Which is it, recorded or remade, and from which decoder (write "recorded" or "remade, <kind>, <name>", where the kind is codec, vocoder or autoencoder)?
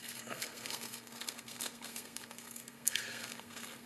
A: remade, codec, SNAC